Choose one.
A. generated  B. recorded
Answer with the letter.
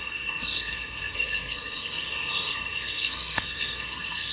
A